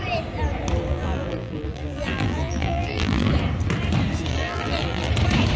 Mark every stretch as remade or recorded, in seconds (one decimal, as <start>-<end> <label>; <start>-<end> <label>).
0.0-0.9 recorded; 0.9-3.3 remade; 3.3-4.3 recorded; 4.3-5.1 remade; 5.1-5.6 recorded